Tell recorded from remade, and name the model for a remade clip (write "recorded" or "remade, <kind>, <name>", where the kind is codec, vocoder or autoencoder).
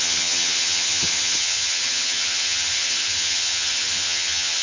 remade, vocoder, HiFi-GAN